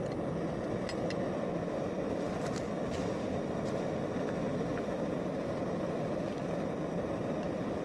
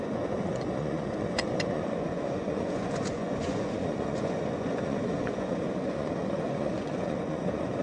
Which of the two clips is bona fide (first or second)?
first